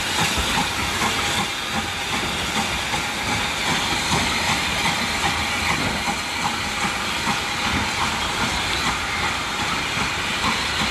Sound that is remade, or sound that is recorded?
recorded